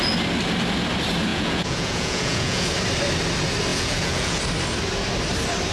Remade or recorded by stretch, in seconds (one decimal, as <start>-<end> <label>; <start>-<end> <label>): 0.0-1.3 recorded; 1.3-2.7 remade; 2.7-3.7 recorded; 3.7-4.4 remade; 4.4-5.7 recorded